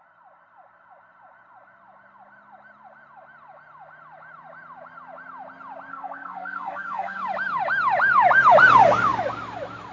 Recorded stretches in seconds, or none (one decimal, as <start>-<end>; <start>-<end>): 0.0-5.9; 7.2-9.9